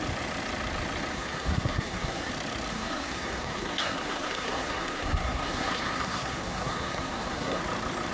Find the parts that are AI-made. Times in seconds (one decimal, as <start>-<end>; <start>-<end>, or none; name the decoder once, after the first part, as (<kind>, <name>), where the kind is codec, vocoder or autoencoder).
1.1-2.3 (codec, SNAC); 2.7-7.6